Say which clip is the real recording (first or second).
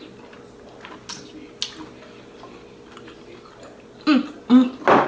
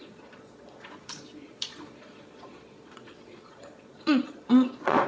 first